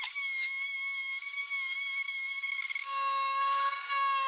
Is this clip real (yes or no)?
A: no